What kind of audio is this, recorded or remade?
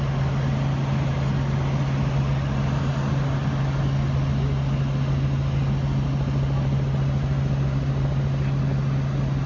recorded